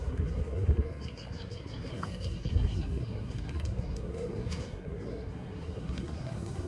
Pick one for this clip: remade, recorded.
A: remade